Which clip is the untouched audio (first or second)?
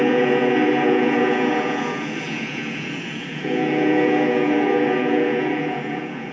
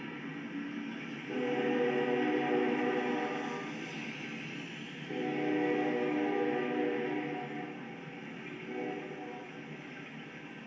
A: second